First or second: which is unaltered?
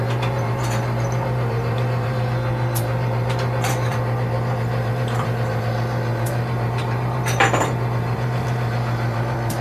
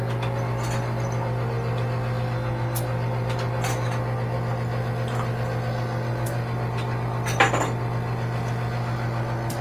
second